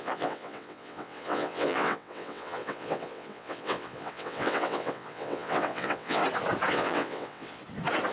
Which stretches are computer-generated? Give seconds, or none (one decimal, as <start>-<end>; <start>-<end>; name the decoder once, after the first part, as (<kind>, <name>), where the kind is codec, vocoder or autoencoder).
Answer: 0.0-6.2 (vocoder, WaveNeXt); 6.7-7.6